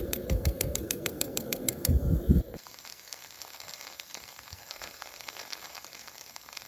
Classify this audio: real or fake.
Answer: fake